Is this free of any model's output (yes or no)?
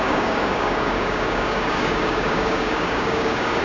no